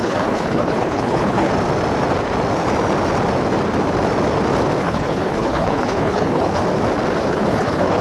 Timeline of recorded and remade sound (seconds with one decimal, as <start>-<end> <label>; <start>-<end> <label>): 0.0-1.5 remade; 1.5-4.8 recorded; 4.8-6.6 remade; 6.6-7.3 recorded; 7.3-8.0 remade